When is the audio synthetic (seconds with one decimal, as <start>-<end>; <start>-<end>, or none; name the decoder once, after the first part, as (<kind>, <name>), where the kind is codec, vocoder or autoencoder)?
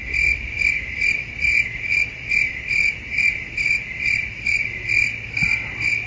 none